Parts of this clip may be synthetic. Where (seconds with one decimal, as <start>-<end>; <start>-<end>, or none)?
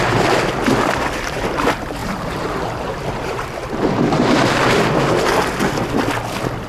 2.0-4.8